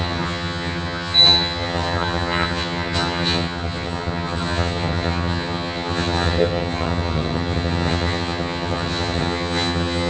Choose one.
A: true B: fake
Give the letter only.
B